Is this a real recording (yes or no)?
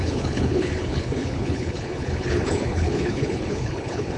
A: no